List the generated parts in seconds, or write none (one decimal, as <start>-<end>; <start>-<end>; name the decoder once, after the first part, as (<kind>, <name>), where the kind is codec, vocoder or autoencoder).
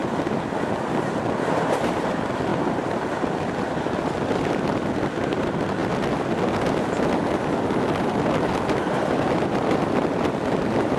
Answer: 1.9-2.5 (vocoder, BigVGAN v2); 4.2-5.8; 8.6-11.0